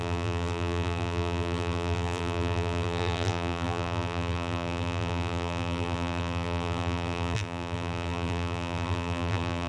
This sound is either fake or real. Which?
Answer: fake